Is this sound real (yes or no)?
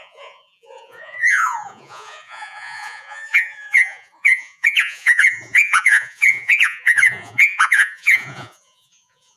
no